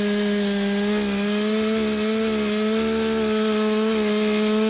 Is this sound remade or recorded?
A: recorded